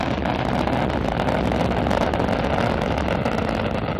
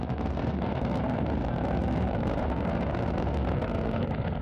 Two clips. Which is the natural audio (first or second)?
first